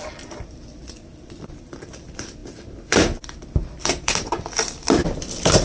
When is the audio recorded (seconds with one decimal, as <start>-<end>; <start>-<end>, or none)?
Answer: none